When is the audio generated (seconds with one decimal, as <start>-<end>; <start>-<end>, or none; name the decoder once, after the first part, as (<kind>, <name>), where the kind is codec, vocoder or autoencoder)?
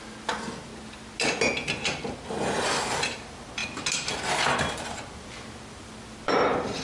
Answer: 0.0-0.7 (vocoder, BigVGAN v2); 2.7-3.6; 4.3-6.8